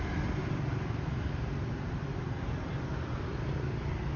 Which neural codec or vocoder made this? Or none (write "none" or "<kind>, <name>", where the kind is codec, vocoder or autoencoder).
none